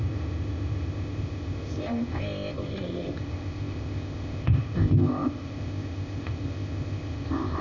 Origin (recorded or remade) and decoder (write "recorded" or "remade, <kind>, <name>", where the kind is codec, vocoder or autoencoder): remade, codec, ZipCodec